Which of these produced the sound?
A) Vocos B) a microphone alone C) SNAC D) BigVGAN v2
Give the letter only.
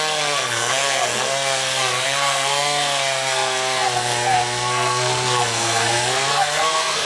C